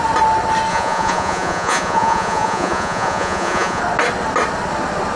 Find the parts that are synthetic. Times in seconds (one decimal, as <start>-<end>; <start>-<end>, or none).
0.7-3.8